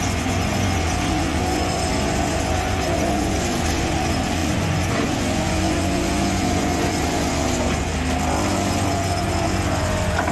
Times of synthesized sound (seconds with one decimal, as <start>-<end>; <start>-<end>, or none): 0.0-7.9; 8.5-10.3